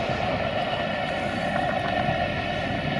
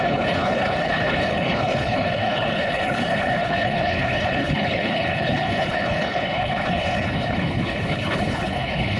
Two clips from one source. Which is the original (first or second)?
first